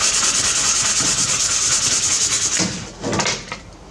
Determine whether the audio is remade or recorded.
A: recorded